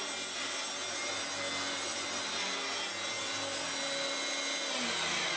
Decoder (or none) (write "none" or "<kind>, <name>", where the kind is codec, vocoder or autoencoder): none